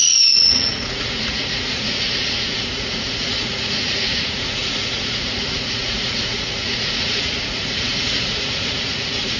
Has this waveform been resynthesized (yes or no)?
yes